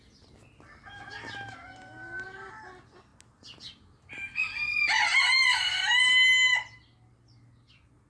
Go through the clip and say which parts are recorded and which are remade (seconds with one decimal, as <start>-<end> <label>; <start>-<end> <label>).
0.0-8.1 recorded